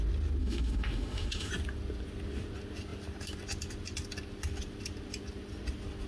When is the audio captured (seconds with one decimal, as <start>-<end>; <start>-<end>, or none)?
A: 0.0-0.4; 1.5-6.1